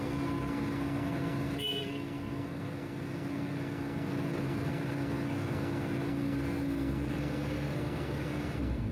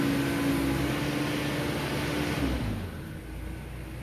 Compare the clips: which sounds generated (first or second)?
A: first